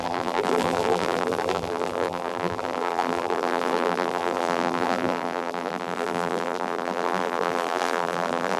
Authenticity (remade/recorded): remade